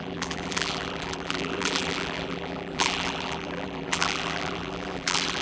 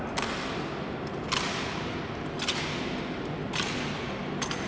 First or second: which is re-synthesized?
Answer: first